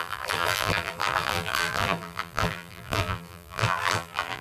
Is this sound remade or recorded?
remade